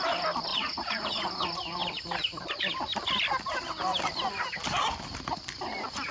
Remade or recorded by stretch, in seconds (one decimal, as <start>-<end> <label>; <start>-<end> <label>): 0.0-0.5 recorded; 0.5-1.2 remade; 1.2-6.1 recorded